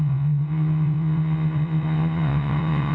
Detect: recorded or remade remade